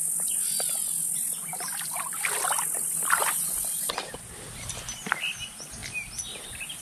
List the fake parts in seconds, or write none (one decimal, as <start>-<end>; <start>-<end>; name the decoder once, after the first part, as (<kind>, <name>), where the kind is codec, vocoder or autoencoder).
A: none